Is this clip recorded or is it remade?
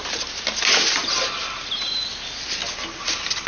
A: recorded